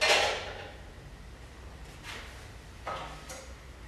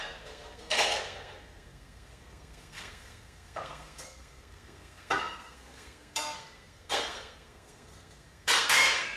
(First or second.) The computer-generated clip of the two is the second